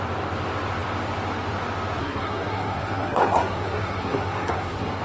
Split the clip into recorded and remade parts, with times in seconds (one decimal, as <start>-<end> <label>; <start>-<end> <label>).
0.0-2.0 recorded; 2.0-5.0 remade